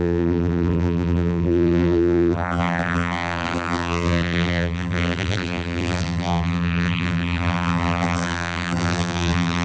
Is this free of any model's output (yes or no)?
no